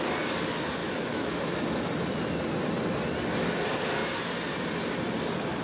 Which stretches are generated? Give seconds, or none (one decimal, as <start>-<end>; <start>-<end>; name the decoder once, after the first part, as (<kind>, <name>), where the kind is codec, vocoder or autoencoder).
0.8-1.4 (autoencoder, DAC-VAE)